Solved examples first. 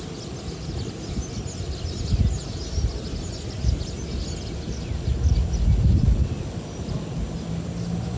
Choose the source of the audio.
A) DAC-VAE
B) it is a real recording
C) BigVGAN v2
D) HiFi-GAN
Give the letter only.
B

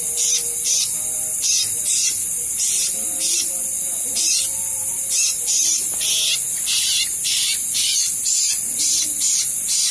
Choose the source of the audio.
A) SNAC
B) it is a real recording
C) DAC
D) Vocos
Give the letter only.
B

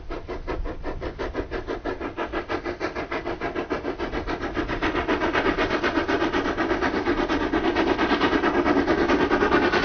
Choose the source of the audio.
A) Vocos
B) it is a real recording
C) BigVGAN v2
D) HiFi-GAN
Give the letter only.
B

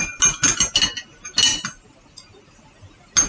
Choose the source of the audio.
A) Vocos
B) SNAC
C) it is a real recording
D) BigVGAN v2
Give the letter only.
C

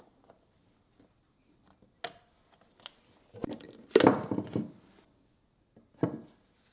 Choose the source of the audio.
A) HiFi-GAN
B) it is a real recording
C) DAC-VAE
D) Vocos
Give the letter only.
B